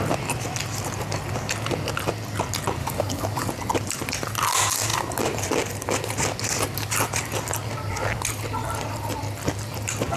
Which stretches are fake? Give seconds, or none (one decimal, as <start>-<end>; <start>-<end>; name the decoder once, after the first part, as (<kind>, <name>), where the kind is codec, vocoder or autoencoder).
2.8-3.5 (codec, DAC)